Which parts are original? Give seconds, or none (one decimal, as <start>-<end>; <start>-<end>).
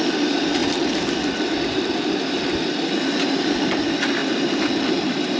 0.0-0.6; 1.3-5.4